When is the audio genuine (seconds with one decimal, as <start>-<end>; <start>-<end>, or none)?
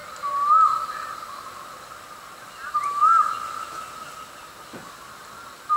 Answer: 0.0-5.8